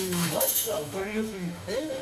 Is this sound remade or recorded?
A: remade